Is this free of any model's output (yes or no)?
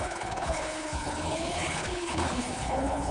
no